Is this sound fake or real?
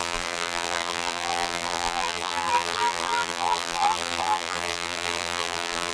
fake